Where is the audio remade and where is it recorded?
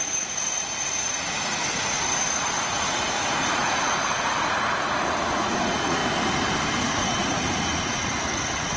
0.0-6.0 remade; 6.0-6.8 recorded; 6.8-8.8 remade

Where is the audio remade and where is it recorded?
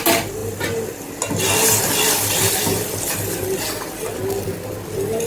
0.0-5.3 recorded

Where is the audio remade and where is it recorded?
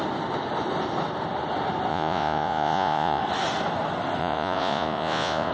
0.0-1.9 recorded; 1.9-3.2 remade; 3.2-4.2 recorded; 4.2-5.5 remade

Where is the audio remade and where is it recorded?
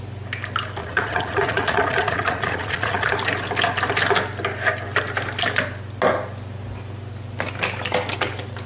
0.0-0.8 recorded; 0.8-3.1 remade; 3.1-8.7 recorded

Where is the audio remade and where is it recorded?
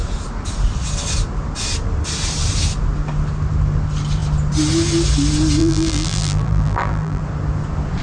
0.0-5.6 recorded; 5.6-7.2 remade; 7.2-8.0 recorded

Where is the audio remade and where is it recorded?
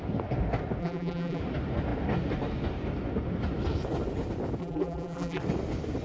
0.0-0.8 recorded; 0.8-1.4 remade; 1.4-4.6 recorded; 4.6-5.4 remade; 5.4-6.0 recorded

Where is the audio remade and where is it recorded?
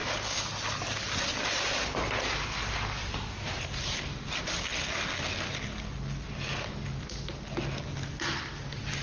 0.0-3.0 recorded; 3.0-4.2 remade; 4.2-9.0 recorded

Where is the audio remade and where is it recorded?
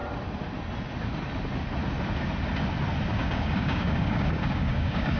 0.0-3.1 recorded; 3.1-5.2 remade